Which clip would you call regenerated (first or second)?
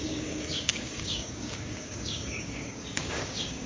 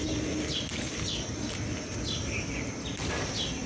first